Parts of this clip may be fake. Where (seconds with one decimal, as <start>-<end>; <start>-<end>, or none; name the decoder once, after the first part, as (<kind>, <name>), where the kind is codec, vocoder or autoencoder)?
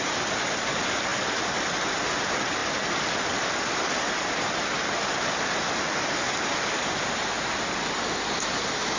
none